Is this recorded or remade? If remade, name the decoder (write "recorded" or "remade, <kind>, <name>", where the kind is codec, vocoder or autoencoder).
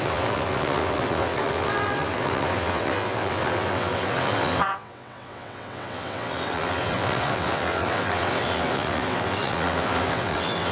remade, vocoder, WaveNeXt